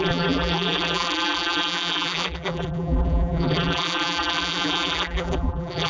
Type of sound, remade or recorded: remade